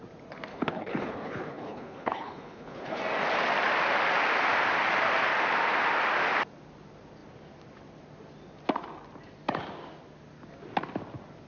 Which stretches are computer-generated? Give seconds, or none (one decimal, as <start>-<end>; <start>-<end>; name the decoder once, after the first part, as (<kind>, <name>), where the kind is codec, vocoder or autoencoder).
0.5-3.0 (codec, HILCodec)